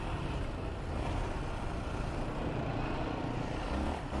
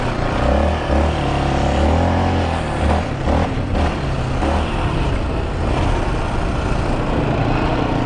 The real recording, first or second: second